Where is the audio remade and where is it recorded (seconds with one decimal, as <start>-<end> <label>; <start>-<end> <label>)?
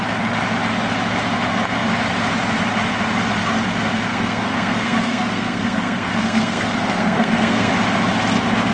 0.0-4.1 recorded; 4.1-7.7 remade; 7.7-8.7 recorded